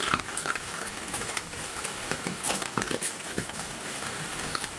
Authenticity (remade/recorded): remade